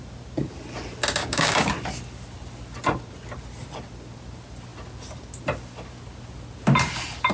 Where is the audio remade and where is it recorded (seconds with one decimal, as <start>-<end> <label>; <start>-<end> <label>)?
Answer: 0.0-1.2 recorded; 1.2-1.7 remade; 1.7-7.3 recorded